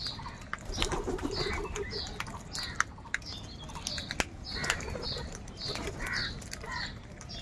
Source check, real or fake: real